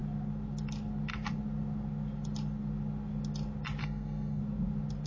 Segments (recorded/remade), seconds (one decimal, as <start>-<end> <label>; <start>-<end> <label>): 0.0-3.8 recorded; 3.8-4.4 remade; 4.4-5.1 recorded